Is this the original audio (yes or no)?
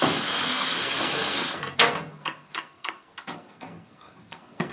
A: no